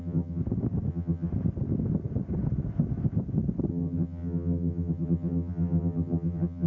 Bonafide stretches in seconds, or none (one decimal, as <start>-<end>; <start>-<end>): 0.4-0.9; 1.3-3.7